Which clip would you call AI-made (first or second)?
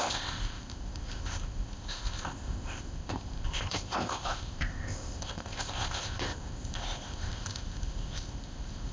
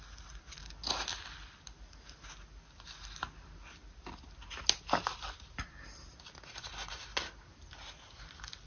first